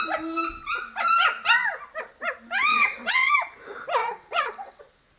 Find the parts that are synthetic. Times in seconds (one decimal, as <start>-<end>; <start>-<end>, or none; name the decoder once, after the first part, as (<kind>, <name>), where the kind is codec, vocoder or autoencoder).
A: 2.7-3.3 (vocoder, WaveNeXt); 4.0-4.8